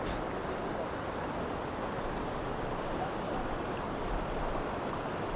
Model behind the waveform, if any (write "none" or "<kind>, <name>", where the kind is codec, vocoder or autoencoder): none